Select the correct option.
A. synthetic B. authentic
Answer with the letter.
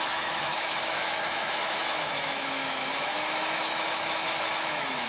A